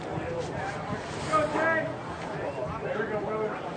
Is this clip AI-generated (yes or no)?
no